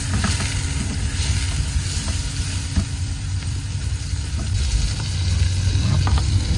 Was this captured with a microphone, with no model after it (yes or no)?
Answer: yes